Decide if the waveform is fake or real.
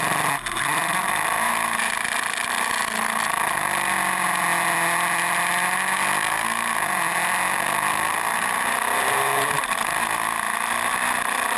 real